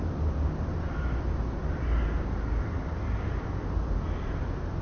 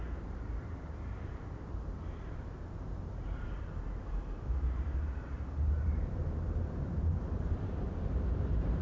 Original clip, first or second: first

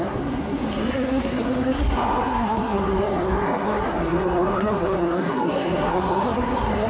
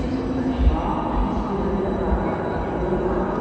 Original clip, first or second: second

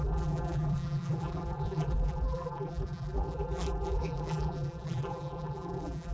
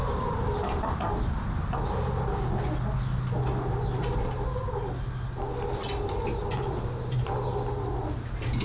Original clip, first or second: second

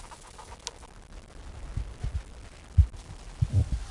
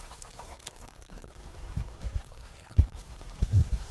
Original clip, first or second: first